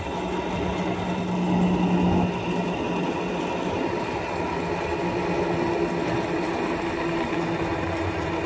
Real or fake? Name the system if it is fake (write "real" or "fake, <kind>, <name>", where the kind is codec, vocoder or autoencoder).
real